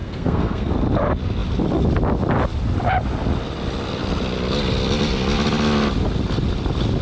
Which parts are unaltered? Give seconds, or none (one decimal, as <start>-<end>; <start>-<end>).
0.7-7.0